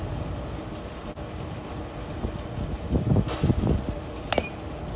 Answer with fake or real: real